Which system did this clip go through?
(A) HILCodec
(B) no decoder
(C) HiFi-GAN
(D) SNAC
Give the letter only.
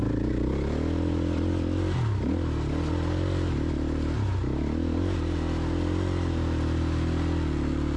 B